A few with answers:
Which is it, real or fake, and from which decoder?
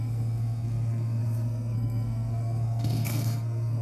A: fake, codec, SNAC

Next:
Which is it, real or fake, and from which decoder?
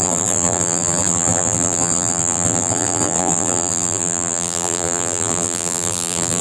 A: fake, vocoder, BigVGAN v2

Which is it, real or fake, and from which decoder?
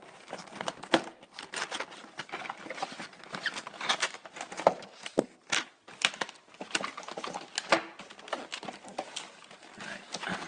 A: real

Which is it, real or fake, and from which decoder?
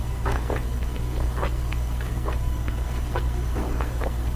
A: fake, codec, SNAC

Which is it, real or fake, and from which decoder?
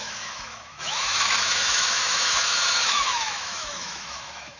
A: fake, autoencoder, DAC-VAE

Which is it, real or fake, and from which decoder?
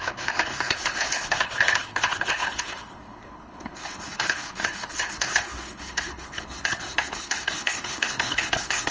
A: fake, codec, HILCodec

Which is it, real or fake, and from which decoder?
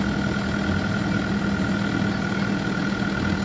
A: real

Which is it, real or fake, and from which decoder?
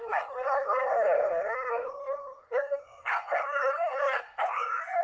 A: fake, codec, SNAC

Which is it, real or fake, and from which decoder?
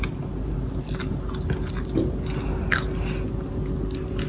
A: real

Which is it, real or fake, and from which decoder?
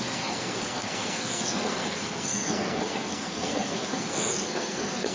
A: fake, codec, SNAC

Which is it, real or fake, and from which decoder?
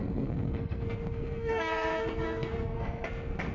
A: fake, codec, SNAC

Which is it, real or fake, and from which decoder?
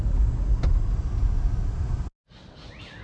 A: real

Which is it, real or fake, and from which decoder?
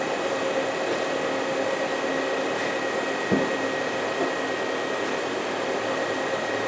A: real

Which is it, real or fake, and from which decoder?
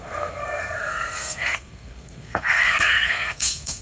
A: fake, codec, SNAC